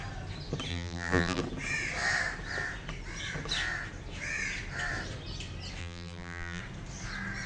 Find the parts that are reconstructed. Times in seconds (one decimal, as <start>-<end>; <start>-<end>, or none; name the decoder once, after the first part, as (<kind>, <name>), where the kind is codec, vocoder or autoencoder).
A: 0.7-1.4 (vocoder, BigVGAN v2); 5.8-6.6